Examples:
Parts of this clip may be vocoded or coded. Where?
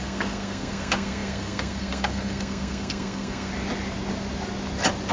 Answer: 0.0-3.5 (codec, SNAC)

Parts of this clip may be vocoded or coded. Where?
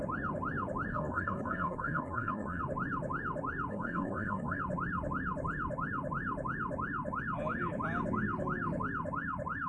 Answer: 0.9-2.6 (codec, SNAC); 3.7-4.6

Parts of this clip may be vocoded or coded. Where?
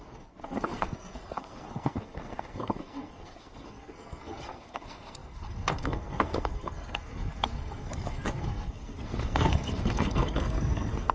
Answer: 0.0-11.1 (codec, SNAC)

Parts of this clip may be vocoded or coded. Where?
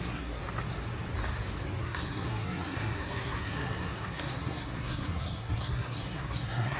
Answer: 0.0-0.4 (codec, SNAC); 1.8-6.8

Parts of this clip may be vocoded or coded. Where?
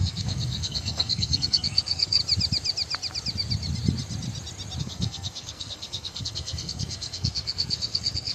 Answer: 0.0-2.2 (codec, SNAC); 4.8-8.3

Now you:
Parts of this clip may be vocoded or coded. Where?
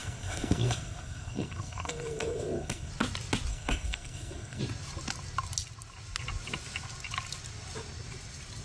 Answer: 0.0-2.9 (codec, SNAC); 3.5-4.6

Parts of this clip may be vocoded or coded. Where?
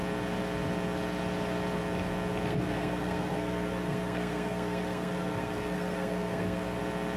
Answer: 2.5-6.8 (codec, SNAC)